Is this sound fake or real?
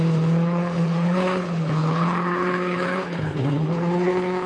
fake